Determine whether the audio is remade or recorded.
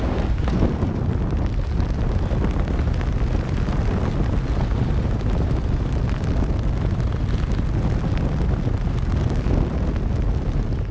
recorded